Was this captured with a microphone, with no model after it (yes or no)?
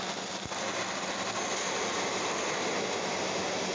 yes